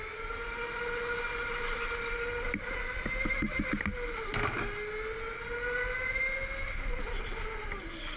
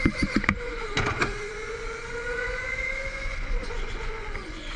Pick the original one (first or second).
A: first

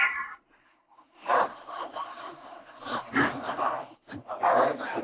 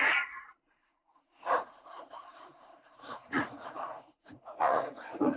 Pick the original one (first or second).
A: first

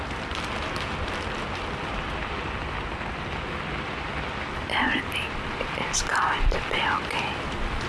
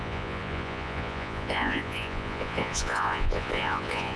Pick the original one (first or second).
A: first